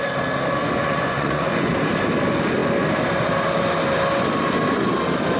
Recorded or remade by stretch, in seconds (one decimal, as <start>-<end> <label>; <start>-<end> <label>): 0.0-0.6 recorded; 0.6-1.7 remade; 1.7-5.4 recorded